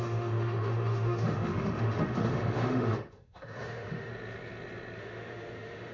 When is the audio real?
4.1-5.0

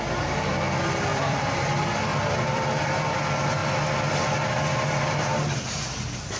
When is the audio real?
0.0-1.1; 1.6-2.1; 3.1-6.4

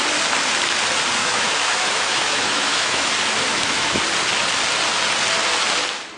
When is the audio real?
0.0-1.2; 3.1-3.5; 4.0-6.2

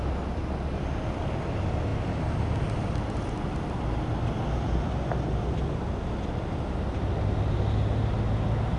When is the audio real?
0.0-8.8

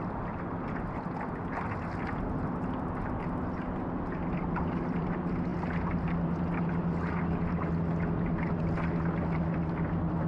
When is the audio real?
0.0-10.3

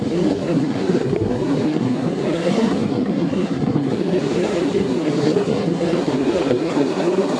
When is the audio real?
none